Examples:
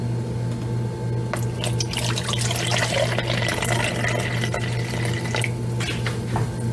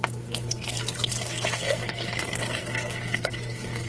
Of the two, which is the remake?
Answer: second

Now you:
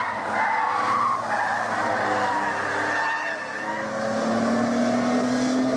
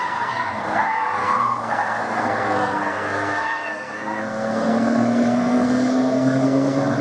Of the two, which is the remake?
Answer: second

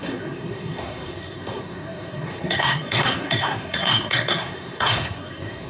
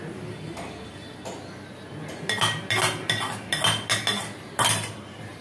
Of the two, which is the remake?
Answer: first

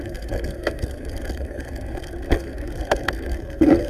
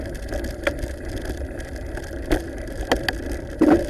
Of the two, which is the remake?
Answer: first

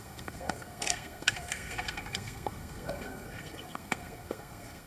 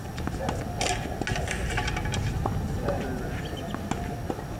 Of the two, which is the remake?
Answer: first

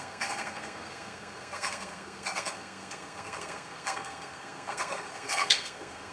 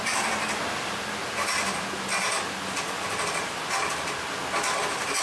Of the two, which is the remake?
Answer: first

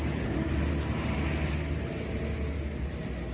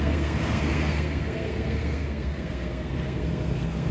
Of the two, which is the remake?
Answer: second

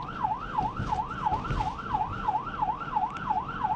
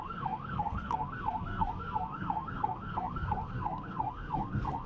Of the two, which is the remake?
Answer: second